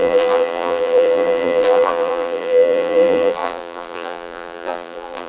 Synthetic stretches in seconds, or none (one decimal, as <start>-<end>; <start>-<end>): 0.0-5.3